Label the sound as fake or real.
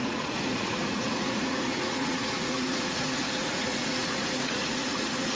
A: fake